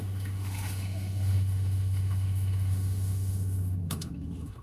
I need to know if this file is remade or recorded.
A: remade